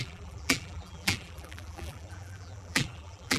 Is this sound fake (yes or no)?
yes